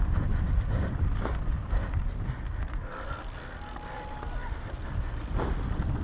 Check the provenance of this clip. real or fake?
real